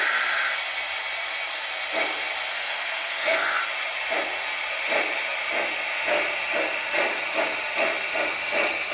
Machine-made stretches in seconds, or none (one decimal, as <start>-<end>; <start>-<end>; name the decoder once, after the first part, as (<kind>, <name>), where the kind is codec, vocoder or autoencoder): 2.5-3.6 (codec, SNAC)